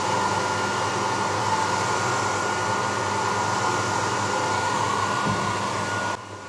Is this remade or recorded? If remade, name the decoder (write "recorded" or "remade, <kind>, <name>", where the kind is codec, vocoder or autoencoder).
recorded